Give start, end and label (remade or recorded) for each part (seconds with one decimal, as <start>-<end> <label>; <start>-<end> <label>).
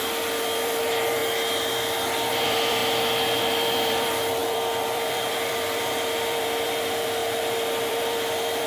0.0-1.2 remade; 1.2-2.3 recorded; 2.3-2.8 remade; 2.8-3.4 recorded; 3.4-7.2 remade; 7.2-7.9 recorded; 7.9-8.7 remade